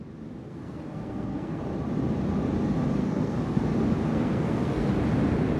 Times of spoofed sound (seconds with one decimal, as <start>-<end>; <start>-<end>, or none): 0.4-1.6; 3.0-3.6; 4.1-4.9

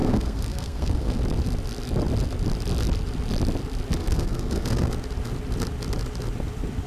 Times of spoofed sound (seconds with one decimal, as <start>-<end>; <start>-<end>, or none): 0.0-1.2; 4.0-4.9

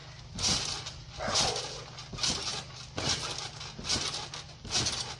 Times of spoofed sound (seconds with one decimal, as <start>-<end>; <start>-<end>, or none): none

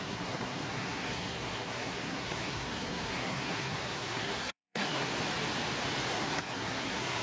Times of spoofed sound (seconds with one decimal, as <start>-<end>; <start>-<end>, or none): 0.0-5.1; 6.1-7.2

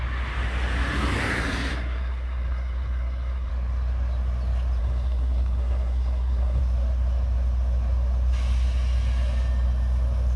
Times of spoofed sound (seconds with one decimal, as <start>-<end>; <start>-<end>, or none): 1.7-3.5; 4.8-6.6